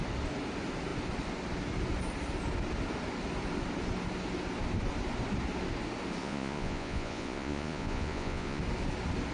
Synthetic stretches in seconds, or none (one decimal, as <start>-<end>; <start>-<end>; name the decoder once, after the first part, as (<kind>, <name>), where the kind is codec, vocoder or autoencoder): 6.2-8.6 (vocoder, Vocos)